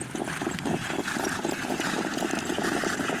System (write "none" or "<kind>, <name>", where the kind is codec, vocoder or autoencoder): none